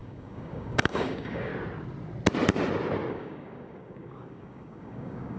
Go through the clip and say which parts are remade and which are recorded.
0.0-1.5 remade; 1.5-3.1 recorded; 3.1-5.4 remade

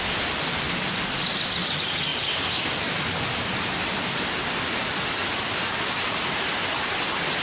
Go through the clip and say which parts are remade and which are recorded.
0.0-7.4 recorded